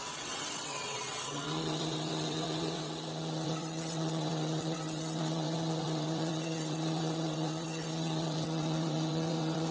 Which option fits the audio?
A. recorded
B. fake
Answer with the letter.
B